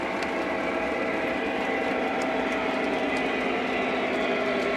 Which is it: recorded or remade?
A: recorded